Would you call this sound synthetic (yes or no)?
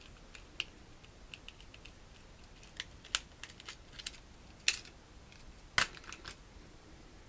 no